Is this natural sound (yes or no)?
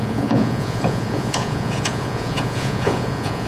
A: no